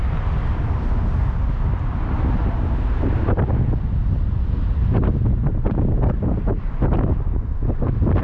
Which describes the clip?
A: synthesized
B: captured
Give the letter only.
B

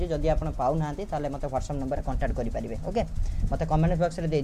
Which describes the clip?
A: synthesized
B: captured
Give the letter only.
B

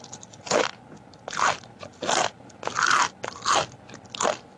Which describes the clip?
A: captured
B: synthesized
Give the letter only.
A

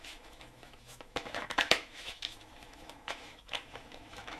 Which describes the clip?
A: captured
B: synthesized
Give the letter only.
B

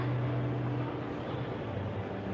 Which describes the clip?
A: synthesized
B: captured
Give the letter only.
B